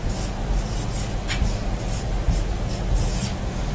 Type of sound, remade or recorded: recorded